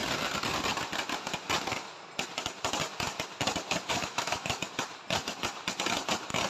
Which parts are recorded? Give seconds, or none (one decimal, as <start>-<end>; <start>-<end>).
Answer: 0.0-3.9; 4.6-6.5